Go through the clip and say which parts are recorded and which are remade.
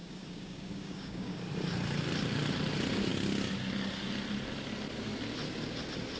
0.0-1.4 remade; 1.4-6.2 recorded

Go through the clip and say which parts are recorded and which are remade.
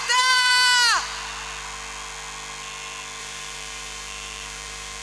0.0-0.5 remade; 0.5-3.2 recorded; 3.2-5.0 remade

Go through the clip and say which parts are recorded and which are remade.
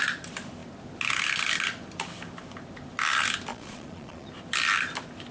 0.0-3.5 recorded; 3.5-4.3 remade; 4.3-5.3 recorded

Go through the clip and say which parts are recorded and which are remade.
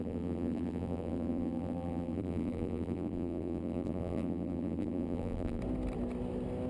0.0-5.6 remade; 5.6-6.7 recorded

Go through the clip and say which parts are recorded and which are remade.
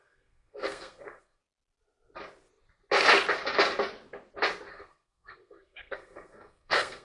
0.0-1.4 remade; 1.4-4.7 recorded; 4.7-7.0 remade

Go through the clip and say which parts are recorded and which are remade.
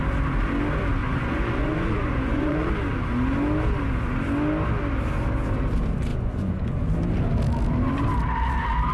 0.0-1.0 recorded; 1.0-2.7 remade; 2.7-6.1 recorded; 6.1-6.8 remade; 6.8-8.9 recorded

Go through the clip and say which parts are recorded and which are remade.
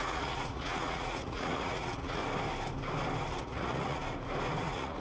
0.0-2.2 remade; 2.2-3.4 recorded; 3.4-4.0 remade; 4.0-4.6 recorded; 4.6-5.0 remade